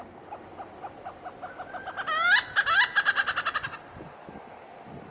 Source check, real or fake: real